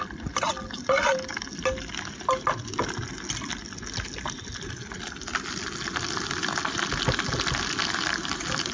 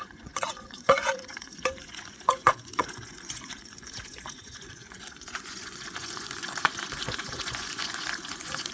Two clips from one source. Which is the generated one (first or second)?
second